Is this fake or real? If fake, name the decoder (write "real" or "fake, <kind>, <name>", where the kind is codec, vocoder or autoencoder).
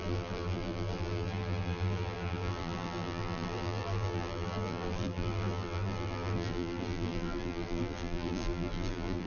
fake, vocoder, BigVGAN v2